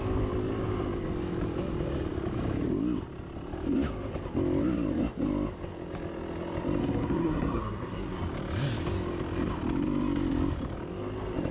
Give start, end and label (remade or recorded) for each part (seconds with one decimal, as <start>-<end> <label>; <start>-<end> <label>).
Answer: 0.0-6.8 recorded; 6.8-8.2 remade; 8.2-11.5 recorded